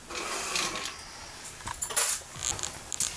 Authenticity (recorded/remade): recorded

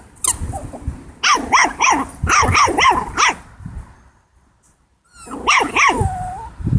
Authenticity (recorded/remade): recorded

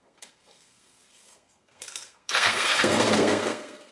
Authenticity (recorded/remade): remade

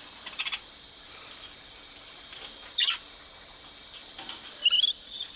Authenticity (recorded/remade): recorded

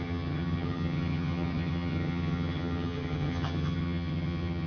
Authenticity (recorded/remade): remade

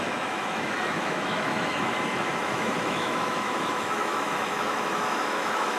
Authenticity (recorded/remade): remade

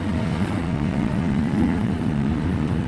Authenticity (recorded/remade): remade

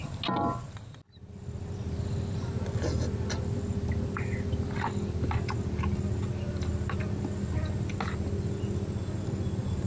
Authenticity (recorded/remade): recorded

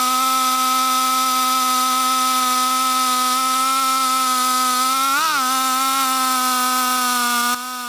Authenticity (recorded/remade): recorded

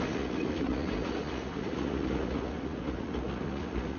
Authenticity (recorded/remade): remade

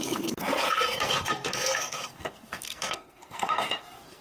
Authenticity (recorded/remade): remade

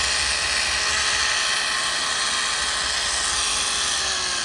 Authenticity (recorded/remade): recorded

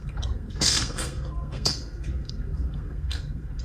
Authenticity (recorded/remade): remade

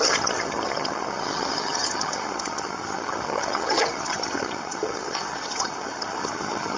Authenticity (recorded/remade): remade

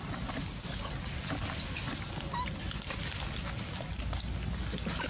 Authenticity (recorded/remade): recorded